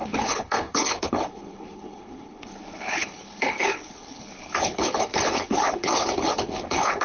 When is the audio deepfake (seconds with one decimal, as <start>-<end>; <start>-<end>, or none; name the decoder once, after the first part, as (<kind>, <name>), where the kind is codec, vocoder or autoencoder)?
0.0-7.0 (codec, HILCodec)